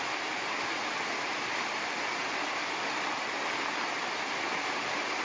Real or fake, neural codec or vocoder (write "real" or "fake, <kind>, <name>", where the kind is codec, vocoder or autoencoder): real